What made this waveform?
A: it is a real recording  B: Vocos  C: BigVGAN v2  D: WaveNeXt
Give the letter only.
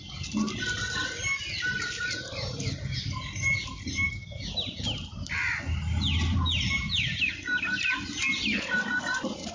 A